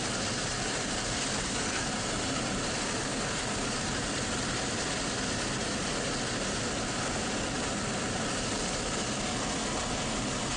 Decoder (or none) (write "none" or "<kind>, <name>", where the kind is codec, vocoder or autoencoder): none